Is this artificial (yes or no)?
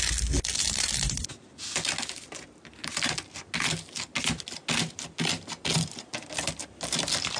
no